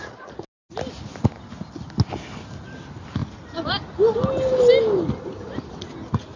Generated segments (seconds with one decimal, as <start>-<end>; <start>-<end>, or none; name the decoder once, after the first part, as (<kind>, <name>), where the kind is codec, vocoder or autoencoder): none